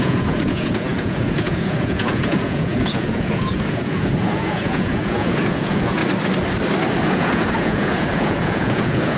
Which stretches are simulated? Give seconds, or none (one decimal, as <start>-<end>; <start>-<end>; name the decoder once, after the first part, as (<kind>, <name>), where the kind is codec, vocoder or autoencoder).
0.0-6.0 (vocoder, Vocos); 7.0-9.2